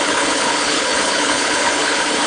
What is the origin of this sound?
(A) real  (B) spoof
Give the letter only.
B